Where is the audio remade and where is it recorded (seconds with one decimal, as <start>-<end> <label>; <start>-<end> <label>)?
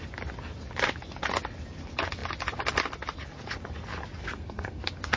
0.0-4.2 recorded; 4.2-4.8 remade; 4.8-5.2 recorded